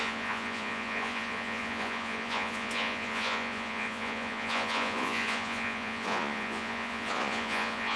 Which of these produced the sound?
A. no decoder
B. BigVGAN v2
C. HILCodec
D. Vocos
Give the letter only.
D